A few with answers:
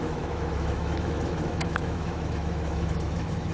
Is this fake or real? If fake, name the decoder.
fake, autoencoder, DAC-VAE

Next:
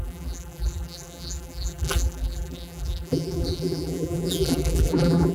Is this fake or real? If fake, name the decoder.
fake, vocoder, BigVGAN v2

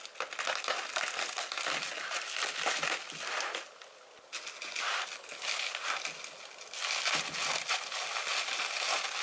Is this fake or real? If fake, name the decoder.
real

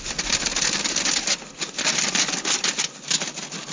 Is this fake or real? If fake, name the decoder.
real